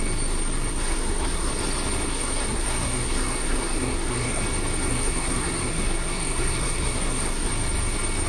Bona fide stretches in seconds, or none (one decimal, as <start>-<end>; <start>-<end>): 0.0-0.7; 1.5-2.1; 4.4-4.9; 7.5-8.3